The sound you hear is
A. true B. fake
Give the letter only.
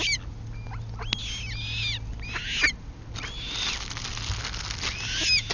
A